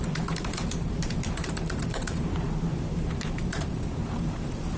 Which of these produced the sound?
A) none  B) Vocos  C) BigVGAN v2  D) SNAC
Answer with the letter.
C